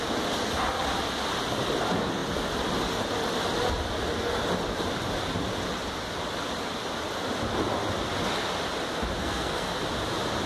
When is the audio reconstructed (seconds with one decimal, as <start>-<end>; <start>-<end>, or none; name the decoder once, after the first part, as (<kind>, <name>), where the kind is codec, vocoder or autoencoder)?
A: 9.2-9.8 (codec, SNAC)